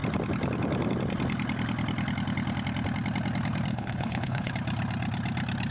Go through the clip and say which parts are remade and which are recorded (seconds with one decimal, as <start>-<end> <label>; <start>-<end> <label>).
0.0-3.7 recorded; 3.7-4.5 remade; 4.5-5.7 recorded